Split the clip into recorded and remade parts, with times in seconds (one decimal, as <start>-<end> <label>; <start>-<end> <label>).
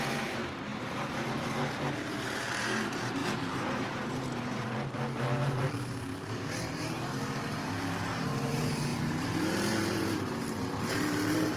0.0-11.6 remade